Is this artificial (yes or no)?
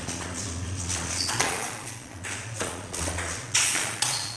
yes